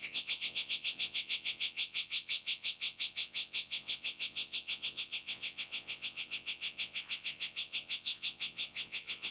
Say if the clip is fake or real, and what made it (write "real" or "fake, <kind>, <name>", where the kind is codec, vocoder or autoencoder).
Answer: fake, vocoder, WaveNeXt